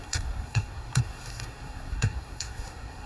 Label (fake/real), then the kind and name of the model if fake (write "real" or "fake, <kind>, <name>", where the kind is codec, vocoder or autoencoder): fake, codec, SNAC